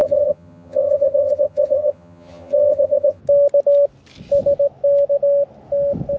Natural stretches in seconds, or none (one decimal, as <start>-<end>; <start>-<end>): 3.2-6.2